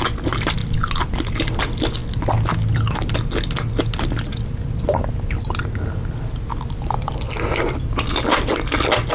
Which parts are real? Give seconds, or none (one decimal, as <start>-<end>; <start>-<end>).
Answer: 0.0-9.1